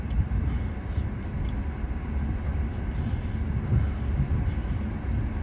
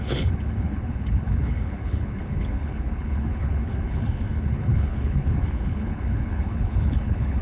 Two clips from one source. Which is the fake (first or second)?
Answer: second